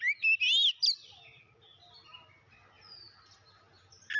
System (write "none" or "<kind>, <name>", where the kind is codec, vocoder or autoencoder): none